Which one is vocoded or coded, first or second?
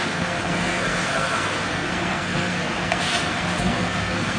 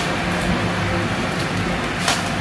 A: first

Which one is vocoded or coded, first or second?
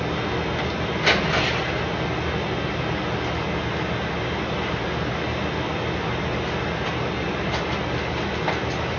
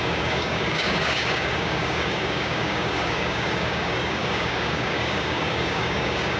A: second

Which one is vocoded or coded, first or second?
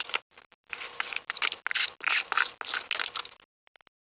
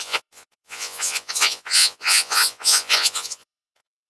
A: second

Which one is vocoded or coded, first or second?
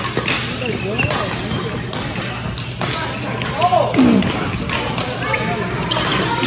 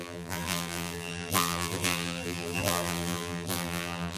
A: second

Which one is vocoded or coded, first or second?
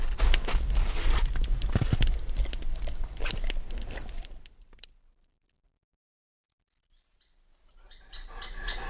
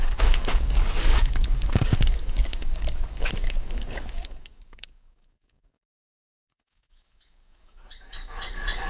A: second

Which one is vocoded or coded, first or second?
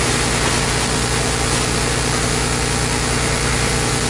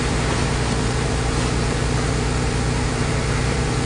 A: second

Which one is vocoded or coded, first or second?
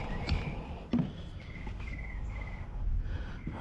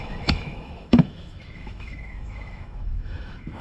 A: second